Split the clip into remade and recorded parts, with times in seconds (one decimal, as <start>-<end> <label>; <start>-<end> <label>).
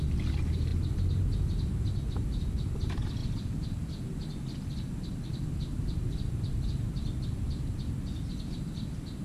0.0-9.2 recorded